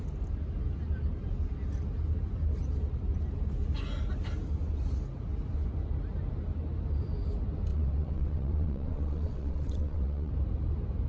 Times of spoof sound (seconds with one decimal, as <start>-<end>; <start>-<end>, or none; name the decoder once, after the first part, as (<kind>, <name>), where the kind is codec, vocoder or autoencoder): 7.7-10.3 (vocoder, WaveNeXt)